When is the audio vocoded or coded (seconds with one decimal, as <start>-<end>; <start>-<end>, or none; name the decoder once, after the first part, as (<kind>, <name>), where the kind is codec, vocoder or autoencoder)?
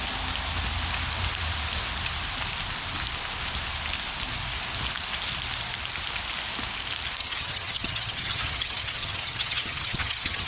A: 7.2-10.5 (vocoder, HiFi-GAN)